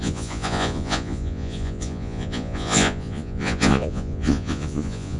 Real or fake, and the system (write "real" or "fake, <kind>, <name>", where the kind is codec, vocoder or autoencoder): fake, vocoder, Vocos